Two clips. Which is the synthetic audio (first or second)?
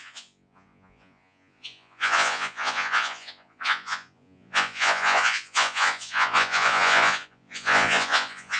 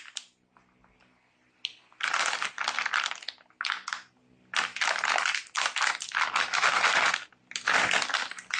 first